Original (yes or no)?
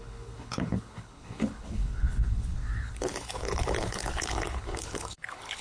no